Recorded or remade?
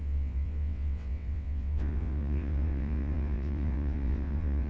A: remade